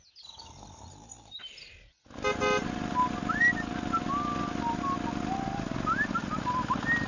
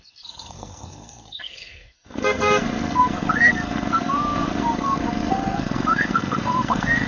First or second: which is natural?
first